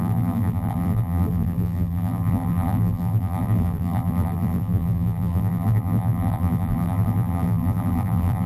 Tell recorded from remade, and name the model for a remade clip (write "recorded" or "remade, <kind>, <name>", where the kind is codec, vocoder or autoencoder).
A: remade, vocoder, BigVGAN v2